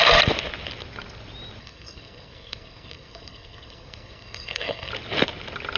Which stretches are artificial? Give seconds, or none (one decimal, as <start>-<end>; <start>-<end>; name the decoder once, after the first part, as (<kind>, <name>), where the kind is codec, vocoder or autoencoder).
1.6-4.9 (codec, SNAC)